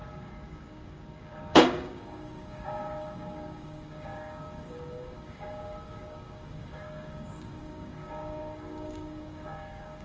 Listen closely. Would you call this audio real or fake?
fake